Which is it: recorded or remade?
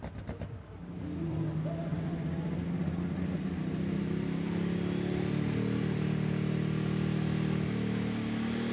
recorded